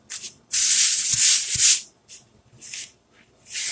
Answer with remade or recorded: recorded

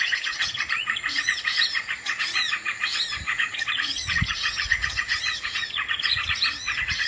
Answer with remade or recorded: remade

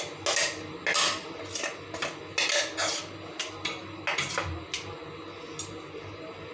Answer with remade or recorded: recorded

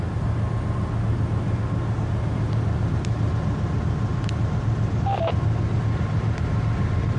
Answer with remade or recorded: recorded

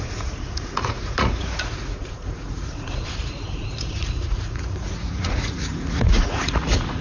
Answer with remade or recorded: remade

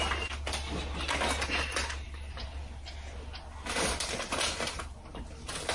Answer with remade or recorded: recorded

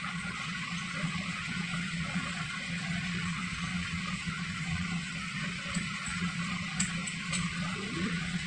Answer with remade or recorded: remade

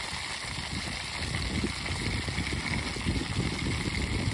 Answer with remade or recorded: recorded